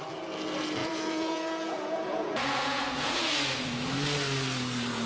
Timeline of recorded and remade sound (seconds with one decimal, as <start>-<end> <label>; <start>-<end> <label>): 0.0-0.8 recorded; 0.8-3.3 remade; 3.3-5.1 recorded